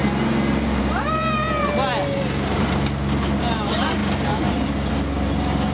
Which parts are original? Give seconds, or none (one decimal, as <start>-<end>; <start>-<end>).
0.0-5.7